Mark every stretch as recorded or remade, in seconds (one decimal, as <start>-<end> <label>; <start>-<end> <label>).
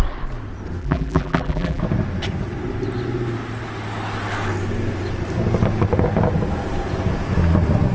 0.0-0.8 recorded; 0.8-1.8 remade; 1.8-7.9 recorded